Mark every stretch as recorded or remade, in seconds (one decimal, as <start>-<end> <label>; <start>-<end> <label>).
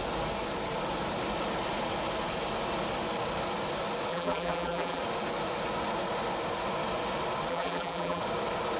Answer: 0.0-4.1 recorded; 4.1-5.0 remade; 5.0-7.5 recorded; 7.5-8.2 remade; 8.2-8.8 recorded